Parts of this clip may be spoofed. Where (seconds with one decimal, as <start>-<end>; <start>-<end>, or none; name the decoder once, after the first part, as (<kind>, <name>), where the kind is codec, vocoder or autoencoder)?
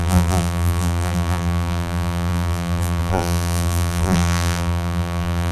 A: 0.0-5.5 (vocoder, BigVGAN v2)